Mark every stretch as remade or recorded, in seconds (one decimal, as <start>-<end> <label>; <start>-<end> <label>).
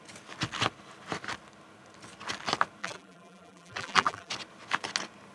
0.0-2.8 recorded; 2.8-4.3 remade; 4.3-5.3 recorded